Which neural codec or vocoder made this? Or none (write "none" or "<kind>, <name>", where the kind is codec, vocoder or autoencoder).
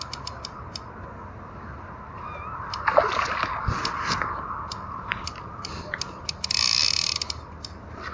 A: none